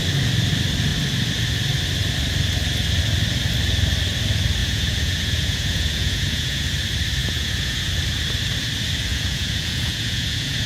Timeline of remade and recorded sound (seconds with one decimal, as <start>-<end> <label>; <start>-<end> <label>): 0.0-4.6 recorded; 4.6-6.7 remade; 6.7-7.2 recorded; 7.2-7.9 remade; 7.9-9.1 recorded; 9.1-10.7 remade